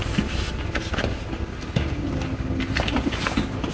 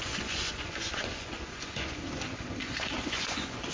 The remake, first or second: second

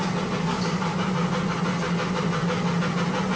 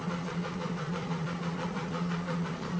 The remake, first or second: second